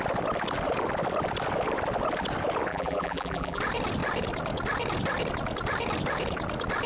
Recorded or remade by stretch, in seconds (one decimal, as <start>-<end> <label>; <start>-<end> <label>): 0.0-2.7 recorded; 2.7-3.6 remade; 3.6-6.9 recorded